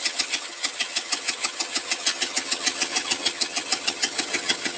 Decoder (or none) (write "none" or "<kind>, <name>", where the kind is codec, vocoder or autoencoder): vocoder, HiFi-GAN